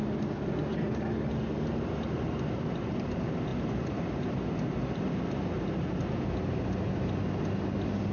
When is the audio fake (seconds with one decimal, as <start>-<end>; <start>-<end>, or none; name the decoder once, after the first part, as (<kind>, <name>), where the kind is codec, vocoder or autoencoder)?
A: none